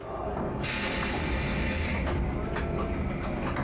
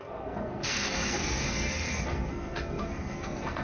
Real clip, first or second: first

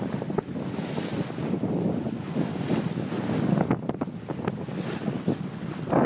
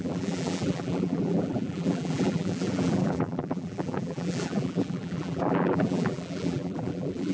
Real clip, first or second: first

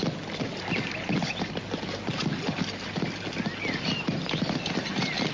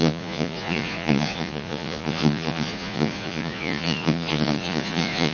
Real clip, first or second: first